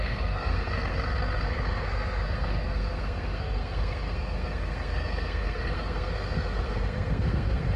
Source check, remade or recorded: remade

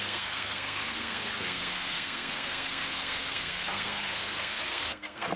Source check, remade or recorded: remade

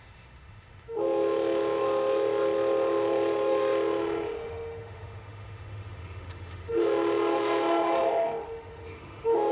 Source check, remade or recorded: remade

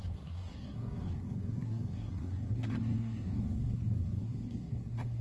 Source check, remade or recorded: remade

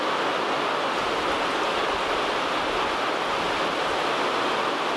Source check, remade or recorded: recorded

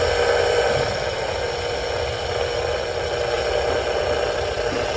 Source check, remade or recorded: recorded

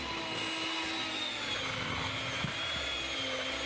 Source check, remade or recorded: recorded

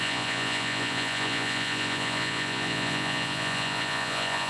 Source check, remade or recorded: remade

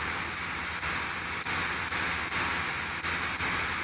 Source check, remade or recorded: recorded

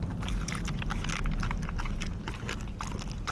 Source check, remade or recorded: recorded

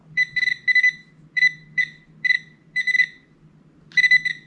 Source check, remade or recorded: recorded